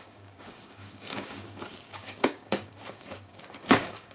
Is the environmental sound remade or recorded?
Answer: remade